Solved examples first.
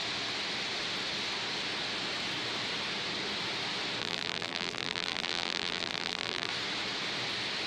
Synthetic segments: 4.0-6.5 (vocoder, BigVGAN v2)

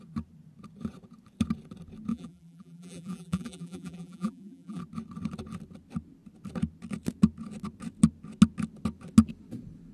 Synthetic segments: 2.1-4.8 (vocoder, BigVGAN v2)

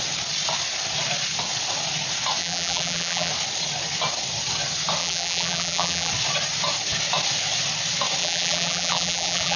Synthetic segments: 2.4-3.3 (vocoder, BigVGAN v2); 5.0-6.1; 8.2-9.6

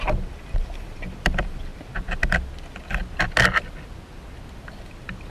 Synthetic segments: 0.0-1.7 (vocoder, BigVGAN v2); 4.5-5.3

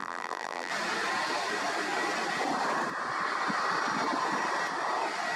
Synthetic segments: 0.0-0.7 (vocoder, BigVGAN v2)

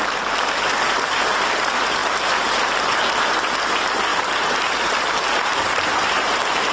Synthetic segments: 0.0-6.7 (vocoder, BigVGAN v2)

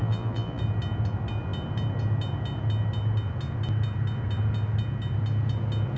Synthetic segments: 0.0-0.6 (vocoder, BigVGAN v2)

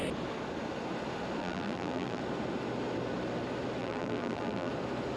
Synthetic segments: 1.4-2.2 (vocoder, BigVGAN v2); 3.8-4.7